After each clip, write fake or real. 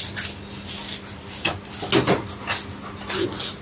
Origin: real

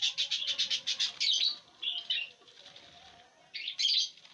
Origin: real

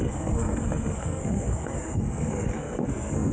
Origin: fake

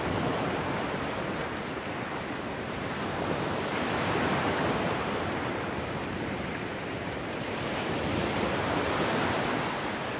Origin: fake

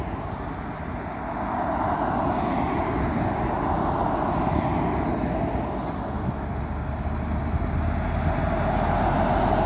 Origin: real